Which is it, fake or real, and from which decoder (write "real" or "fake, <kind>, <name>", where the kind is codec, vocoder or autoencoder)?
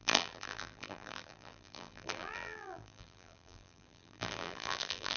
fake, vocoder, BigVGAN v2